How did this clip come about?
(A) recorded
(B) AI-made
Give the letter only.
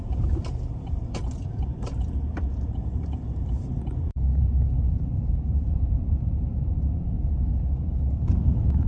B